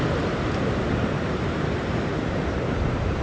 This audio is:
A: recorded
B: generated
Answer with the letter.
B